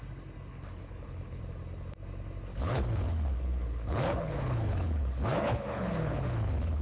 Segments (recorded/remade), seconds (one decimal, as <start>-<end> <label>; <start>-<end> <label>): 0.0-0.5 recorded; 0.5-1.4 remade; 1.4-2.5 recorded; 2.5-6.8 remade